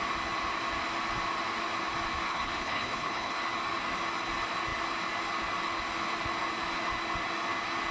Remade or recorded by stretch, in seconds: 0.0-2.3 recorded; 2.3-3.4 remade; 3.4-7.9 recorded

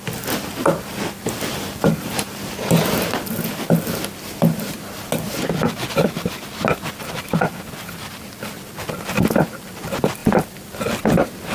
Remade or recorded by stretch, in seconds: 0.0-11.5 recorded

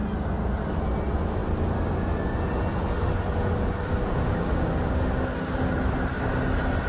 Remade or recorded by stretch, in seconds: 0.0-3.9 recorded; 3.9-5.3 remade; 5.3-6.9 recorded

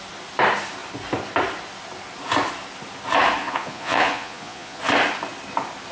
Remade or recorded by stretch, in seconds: 0.0-3.4 recorded; 3.4-4.8 remade; 4.8-5.9 recorded

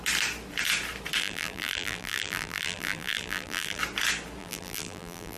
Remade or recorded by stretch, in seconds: 0.0-1.2 recorded; 1.2-3.8 remade; 3.8-4.4 recorded; 4.4-5.4 remade

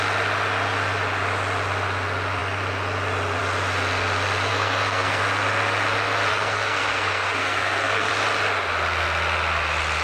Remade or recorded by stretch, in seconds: 0.0-4.5 recorded; 4.5-5.2 remade; 5.2-6.3 recorded; 6.3-8.1 remade; 8.1-10.0 recorded

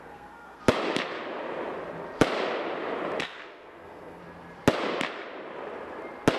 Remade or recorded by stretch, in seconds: 0.0-0.6 remade; 0.6-3.2 recorded; 3.2-4.2 remade; 4.2-6.4 recorded

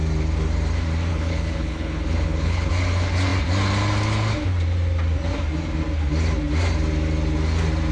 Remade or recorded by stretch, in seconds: 0.0-1.1 recorded; 1.1-2.7 remade; 2.7-7.9 recorded